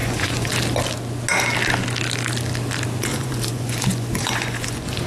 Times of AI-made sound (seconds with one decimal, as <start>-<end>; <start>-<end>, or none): 0.0-0.5; 3.1-5.1